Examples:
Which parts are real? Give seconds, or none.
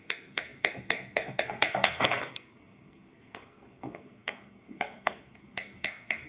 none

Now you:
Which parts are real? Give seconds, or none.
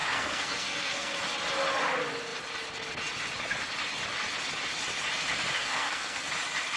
1.2-5.6; 6.3-6.8